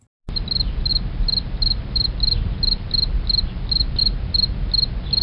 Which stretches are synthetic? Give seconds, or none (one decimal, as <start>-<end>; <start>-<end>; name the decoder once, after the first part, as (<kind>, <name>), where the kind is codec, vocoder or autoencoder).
none